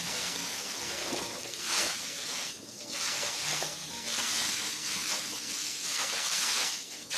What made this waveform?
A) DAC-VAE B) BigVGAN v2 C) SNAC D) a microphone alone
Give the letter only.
C